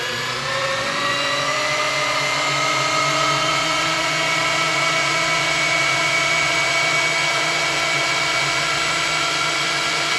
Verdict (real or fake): fake